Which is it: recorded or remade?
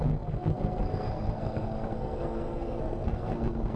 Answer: remade